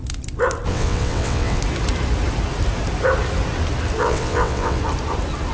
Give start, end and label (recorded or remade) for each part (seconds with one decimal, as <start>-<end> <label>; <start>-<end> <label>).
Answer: 0.0-0.7 recorded; 0.7-1.6 remade; 1.6-4.0 recorded; 4.0-4.8 remade; 4.8-5.5 recorded